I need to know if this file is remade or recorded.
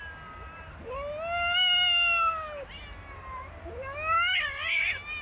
recorded